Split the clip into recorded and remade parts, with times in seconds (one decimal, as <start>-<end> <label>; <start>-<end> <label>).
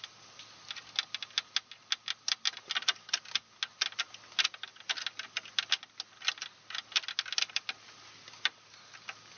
0.0-9.4 recorded